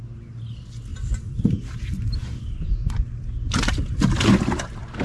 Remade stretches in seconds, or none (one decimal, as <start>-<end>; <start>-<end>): 0.9-3.2